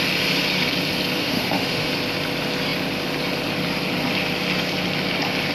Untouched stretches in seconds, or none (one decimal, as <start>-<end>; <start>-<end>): 0.0-1.2; 1.9-5.5